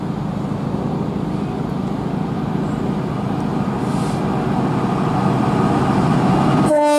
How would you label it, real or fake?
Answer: real